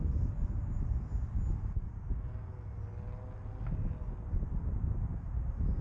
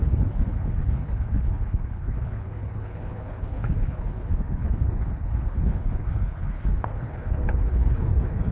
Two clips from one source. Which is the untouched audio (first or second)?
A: first